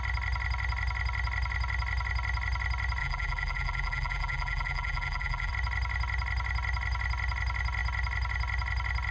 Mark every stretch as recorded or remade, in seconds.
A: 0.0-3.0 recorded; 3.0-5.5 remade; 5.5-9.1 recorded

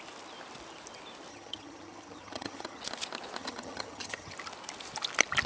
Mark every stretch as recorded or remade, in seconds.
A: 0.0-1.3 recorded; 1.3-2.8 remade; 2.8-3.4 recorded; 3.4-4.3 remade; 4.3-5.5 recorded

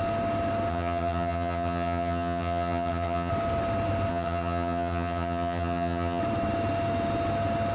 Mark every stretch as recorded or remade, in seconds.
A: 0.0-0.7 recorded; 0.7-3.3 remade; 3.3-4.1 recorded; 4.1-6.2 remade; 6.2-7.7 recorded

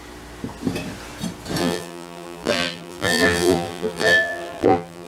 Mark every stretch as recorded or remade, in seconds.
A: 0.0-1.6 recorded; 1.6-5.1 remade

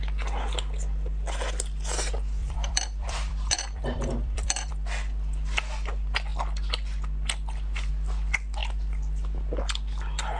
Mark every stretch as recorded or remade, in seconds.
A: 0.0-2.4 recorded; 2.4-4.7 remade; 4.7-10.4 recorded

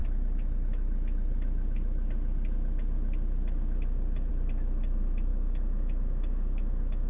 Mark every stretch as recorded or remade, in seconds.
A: 0.0-5.3 recorded; 5.3-7.1 remade

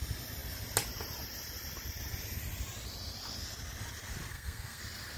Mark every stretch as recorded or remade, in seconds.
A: 0.0-4.3 recorded; 4.3-4.8 remade; 4.8-5.2 recorded